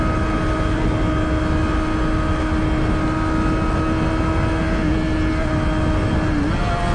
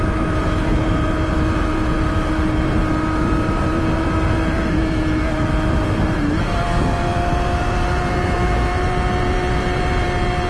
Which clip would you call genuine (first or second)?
first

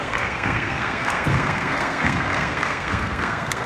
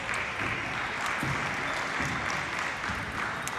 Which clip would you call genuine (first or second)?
second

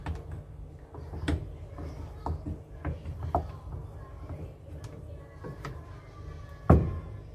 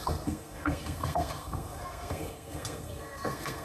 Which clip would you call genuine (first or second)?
first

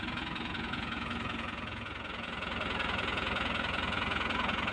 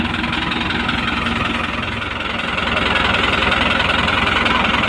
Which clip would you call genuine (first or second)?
second